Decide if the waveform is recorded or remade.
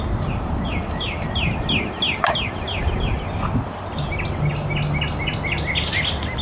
recorded